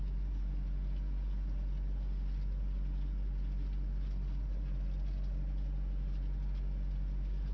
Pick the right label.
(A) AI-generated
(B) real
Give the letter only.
B